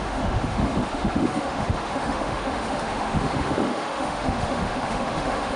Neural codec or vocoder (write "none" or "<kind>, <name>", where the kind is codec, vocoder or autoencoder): autoencoder, DAC-VAE